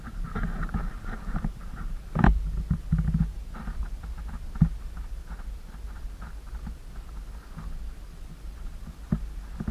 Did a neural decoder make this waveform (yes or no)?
no